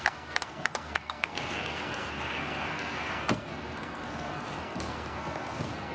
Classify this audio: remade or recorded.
remade